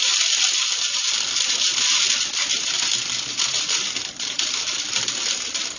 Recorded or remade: recorded